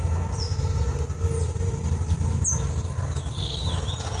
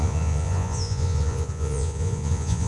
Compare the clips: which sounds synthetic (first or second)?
second